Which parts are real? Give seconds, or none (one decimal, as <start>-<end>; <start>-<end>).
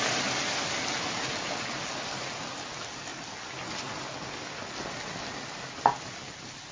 0.0-6.7